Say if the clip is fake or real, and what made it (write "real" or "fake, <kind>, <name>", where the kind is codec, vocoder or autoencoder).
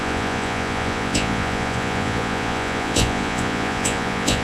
fake, vocoder, Vocos